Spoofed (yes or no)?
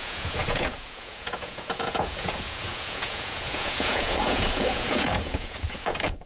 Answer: yes